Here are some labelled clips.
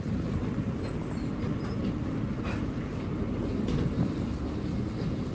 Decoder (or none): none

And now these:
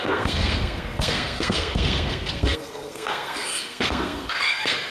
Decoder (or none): codec, SNAC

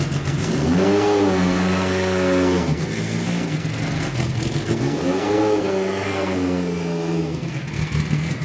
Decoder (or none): codec, SNAC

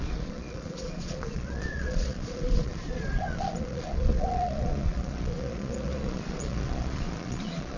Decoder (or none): vocoder, Vocos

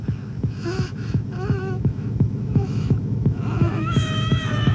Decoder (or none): autoencoder, DAC-VAE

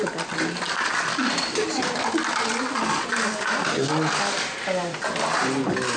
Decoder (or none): none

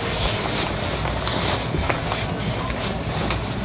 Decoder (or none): none